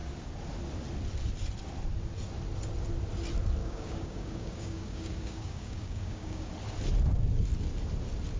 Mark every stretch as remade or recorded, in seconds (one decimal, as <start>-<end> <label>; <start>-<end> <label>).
0.0-3.6 recorded; 3.6-6.5 remade; 6.5-8.4 recorded